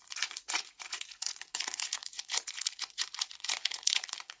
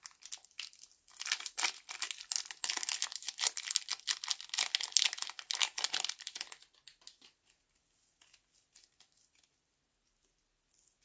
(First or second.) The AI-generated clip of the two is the first